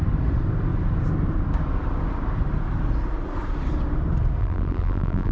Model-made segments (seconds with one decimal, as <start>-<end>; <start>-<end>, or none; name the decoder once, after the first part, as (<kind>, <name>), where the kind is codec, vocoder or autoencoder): 4.4-5.3 (vocoder, BigVGAN v2)